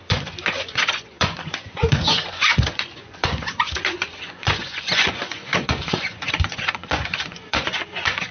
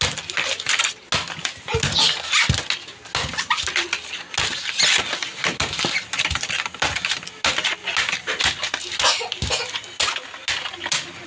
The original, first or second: second